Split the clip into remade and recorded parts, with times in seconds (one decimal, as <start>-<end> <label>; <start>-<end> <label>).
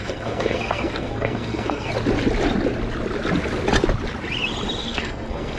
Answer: 0.0-1.9 remade; 1.9-4.8 recorded; 4.8-5.6 remade